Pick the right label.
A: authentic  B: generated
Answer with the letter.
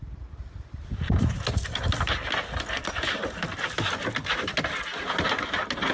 A